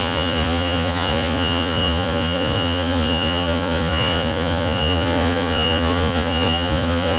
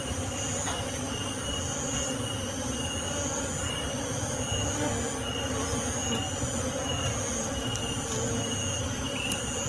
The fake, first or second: first